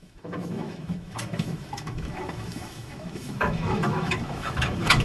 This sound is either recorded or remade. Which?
remade